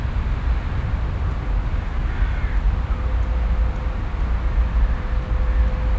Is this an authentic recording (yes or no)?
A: yes